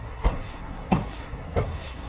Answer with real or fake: fake